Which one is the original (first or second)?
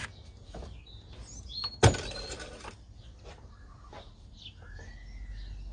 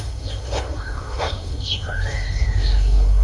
first